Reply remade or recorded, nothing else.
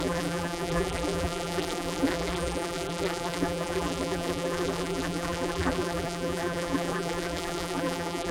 remade